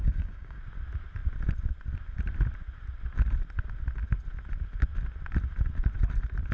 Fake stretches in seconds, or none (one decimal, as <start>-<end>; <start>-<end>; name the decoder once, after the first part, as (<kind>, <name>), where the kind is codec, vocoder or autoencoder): 0.0-0.6 (codec, DAC)